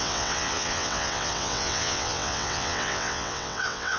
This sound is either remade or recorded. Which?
remade